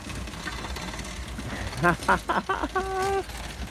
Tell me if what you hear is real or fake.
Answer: real